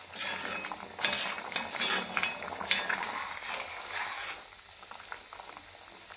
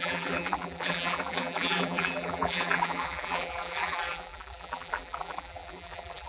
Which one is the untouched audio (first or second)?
first